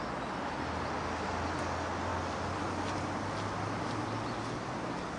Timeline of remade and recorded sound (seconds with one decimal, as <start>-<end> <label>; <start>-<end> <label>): 0.0-5.2 recorded